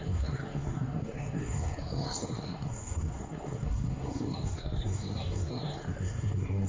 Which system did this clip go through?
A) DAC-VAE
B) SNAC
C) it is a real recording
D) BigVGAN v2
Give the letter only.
B